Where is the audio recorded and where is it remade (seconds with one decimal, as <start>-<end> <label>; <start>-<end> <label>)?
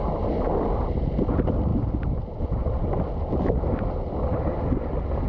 0.0-5.3 recorded